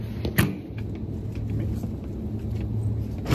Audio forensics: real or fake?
real